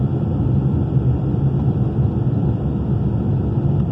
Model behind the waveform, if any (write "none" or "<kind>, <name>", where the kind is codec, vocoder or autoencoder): vocoder, BigVGAN v2